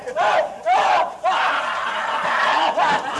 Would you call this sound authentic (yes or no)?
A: no